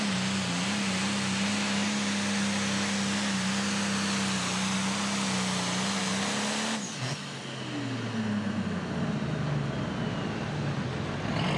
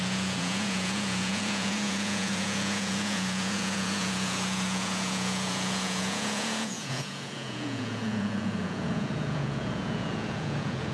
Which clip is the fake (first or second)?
second